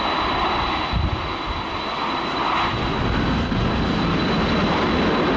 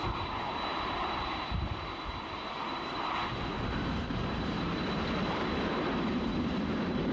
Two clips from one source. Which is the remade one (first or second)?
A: second